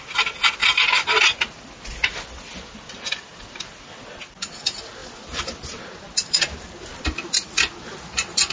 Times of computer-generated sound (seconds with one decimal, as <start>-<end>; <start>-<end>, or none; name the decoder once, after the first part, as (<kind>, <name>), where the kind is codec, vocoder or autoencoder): none